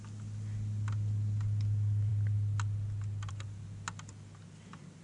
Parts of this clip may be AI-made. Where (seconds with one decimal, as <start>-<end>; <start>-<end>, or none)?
none